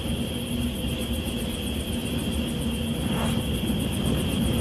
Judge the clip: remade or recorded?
recorded